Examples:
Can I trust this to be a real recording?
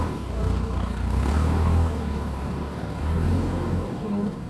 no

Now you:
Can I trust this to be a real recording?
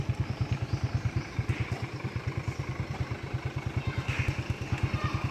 yes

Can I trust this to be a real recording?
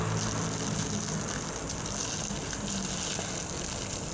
yes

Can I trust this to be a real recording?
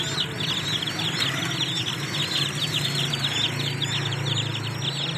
yes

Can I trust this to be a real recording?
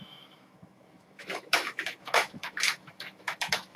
no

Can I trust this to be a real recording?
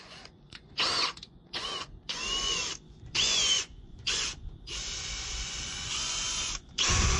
no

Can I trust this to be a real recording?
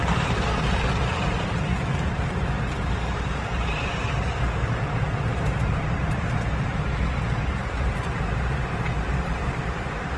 no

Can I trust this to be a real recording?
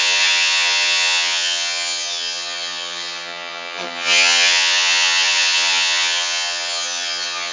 no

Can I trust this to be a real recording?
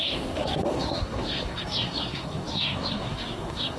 no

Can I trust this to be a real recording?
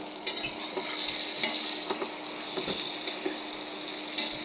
yes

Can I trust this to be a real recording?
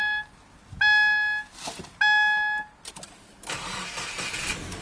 yes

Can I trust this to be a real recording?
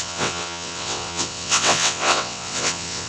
no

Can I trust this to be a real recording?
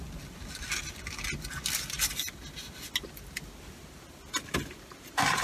yes